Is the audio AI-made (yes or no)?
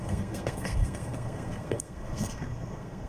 yes